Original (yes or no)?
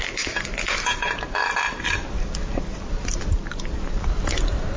yes